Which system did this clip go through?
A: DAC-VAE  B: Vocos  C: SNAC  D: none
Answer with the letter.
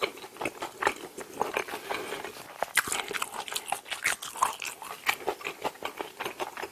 D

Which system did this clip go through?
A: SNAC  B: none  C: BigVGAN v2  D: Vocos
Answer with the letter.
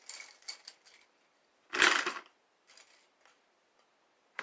B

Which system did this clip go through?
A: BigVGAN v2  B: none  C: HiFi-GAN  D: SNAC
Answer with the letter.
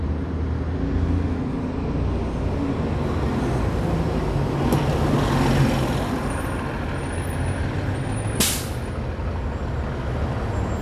B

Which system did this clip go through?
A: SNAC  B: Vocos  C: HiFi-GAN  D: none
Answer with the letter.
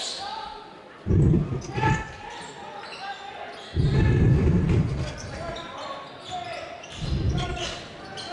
D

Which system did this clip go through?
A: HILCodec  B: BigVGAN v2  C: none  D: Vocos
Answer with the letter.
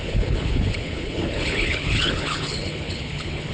A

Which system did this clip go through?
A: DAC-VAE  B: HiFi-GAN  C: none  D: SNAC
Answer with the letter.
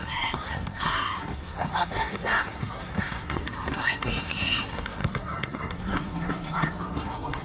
D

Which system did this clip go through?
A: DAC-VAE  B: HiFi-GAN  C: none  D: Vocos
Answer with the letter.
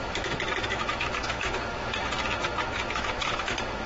A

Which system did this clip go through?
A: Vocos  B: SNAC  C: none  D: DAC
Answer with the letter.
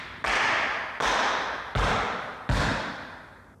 C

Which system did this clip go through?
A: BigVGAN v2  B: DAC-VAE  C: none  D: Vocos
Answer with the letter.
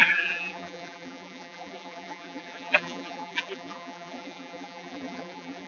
A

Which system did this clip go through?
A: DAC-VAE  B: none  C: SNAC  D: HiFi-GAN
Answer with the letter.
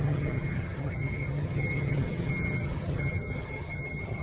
D